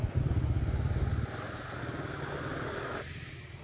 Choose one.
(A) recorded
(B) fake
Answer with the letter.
A